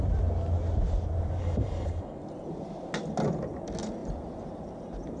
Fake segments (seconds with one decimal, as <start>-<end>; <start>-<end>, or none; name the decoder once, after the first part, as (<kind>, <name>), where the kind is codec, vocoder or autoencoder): 1.4-2.2 (codec, DAC)